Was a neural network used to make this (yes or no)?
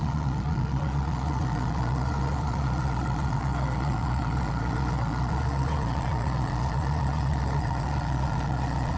yes